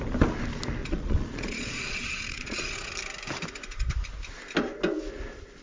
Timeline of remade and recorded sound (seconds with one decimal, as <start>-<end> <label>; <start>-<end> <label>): 0.0-0.8 recorded; 0.8-2.9 remade; 2.9-5.6 recorded